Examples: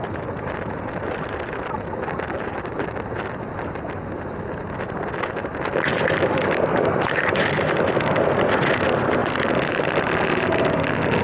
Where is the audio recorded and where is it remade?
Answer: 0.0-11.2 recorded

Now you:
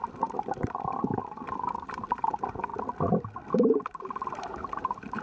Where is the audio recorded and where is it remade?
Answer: 0.0-2.7 remade; 2.7-3.5 recorded; 3.5-5.2 remade

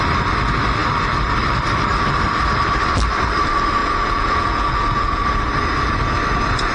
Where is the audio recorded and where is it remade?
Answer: 0.0-3.8 recorded; 3.8-5.2 remade; 5.2-6.7 recorded